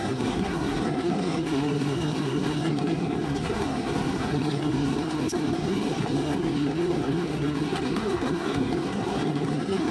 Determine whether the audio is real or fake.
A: fake